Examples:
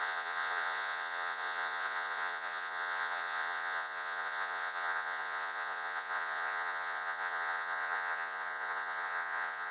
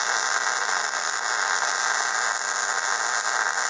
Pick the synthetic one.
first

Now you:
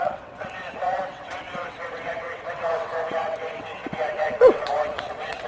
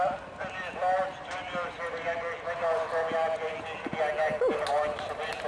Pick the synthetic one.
first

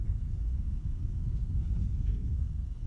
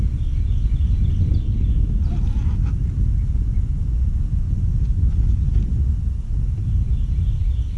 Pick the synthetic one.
first